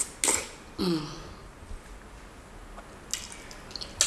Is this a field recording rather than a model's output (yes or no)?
yes